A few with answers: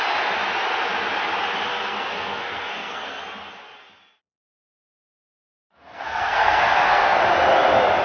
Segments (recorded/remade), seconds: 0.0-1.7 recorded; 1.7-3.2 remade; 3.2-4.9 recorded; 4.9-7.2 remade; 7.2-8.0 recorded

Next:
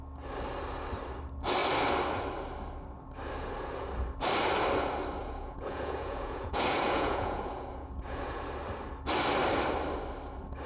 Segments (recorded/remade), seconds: 0.0-5.2 recorded; 5.2-8.4 remade; 8.4-10.7 recorded

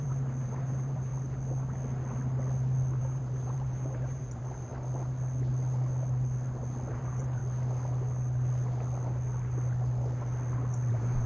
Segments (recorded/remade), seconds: 0.0-1.1 remade; 1.1-3.0 recorded; 3.0-4.7 remade; 4.7-6.9 recorded; 6.9-7.4 remade; 7.4-10.9 recorded; 10.9-11.3 remade

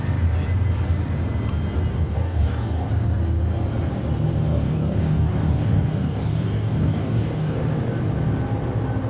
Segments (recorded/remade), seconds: 0.0-1.9 recorded; 1.9-2.9 remade; 2.9-4.5 recorded; 4.5-7.6 remade; 7.6-9.1 recorded

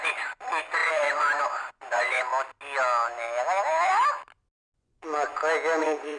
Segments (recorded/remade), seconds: 0.0-2.3 remade; 2.3-4.8 recorded; 4.8-5.3 remade; 5.3-5.8 recorded; 5.8-6.2 remade

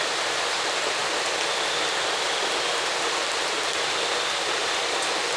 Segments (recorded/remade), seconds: 0.0-5.4 recorded

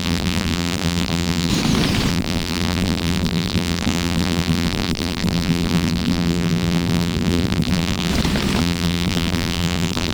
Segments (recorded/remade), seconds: 0.0-1.5 remade; 1.5-2.1 recorded; 2.1-8.1 remade; 8.1-8.6 recorded; 8.6-10.1 remade

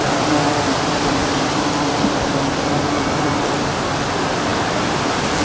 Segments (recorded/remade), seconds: 0.0-5.4 recorded